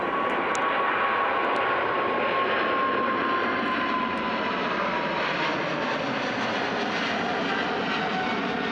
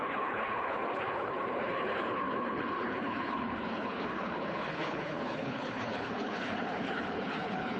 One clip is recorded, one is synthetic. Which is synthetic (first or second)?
second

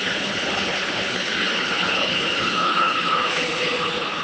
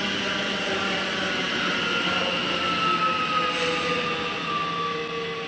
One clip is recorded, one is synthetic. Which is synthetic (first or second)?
first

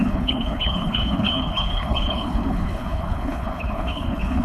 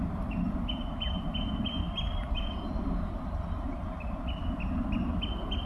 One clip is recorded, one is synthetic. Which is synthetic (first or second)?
first